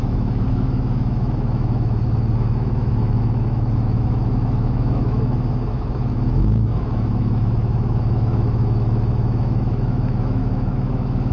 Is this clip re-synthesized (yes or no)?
yes